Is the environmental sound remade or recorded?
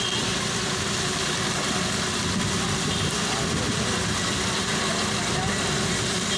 recorded